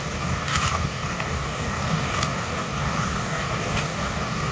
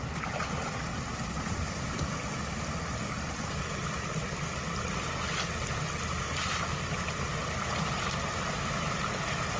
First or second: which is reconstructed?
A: first